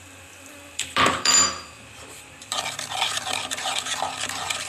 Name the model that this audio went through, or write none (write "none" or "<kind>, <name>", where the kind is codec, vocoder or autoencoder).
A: vocoder, BigVGAN v2